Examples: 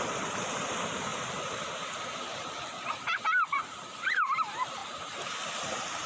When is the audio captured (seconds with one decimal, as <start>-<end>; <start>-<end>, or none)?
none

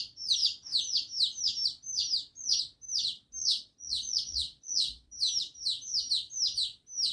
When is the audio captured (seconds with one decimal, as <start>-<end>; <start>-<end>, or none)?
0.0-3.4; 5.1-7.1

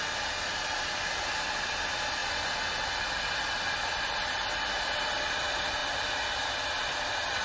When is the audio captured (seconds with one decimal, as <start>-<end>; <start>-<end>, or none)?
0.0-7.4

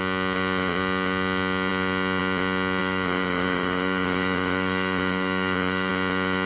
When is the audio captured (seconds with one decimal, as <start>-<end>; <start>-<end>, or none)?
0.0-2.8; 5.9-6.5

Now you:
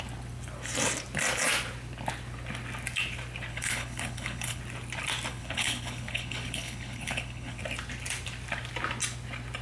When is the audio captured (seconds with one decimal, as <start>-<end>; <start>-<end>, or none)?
0.0-3.5; 4.6-5.3; 7.6-9.6

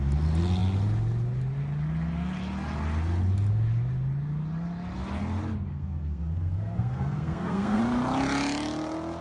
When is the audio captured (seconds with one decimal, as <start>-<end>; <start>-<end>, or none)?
0.0-5.7; 7.8-9.2

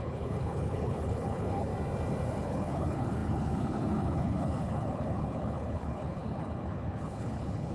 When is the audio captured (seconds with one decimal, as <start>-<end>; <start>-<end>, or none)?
1.7-2.4